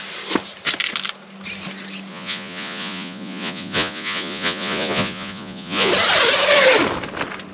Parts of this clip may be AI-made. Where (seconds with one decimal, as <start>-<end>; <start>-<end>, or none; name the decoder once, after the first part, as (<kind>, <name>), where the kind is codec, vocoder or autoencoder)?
2.1-5.9 (vocoder, Vocos)